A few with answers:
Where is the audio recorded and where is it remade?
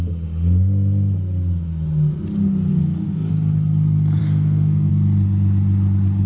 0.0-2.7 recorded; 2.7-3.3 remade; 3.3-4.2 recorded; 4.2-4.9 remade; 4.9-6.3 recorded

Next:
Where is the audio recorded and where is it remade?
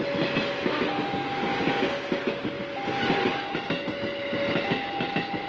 0.0-1.5 recorded; 1.5-2.6 remade; 2.6-5.5 recorded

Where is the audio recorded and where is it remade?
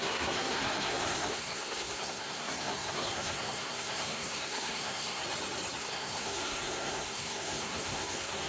0.0-5.2 remade; 5.2-5.8 recorded; 5.8-8.5 remade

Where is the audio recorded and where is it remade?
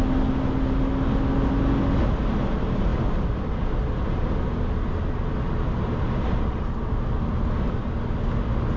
0.0-8.8 recorded